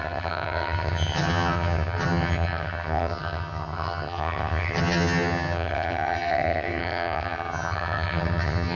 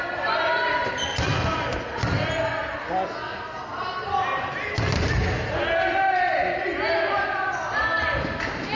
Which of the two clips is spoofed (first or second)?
first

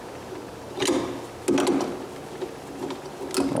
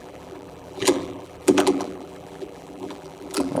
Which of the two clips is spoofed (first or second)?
second